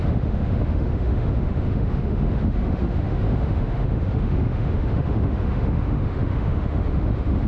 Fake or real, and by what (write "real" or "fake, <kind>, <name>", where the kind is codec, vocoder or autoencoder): fake, autoencoder, DAC-VAE